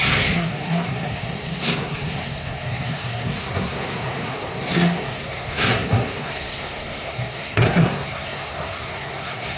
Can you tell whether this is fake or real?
fake